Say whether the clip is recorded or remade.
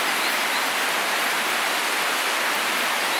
remade